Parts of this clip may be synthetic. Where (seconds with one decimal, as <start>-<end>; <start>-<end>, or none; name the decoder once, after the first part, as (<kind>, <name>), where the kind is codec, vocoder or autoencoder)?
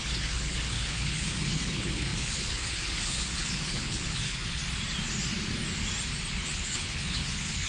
0.0-4.6 (codec, HILCodec); 6.3-7.7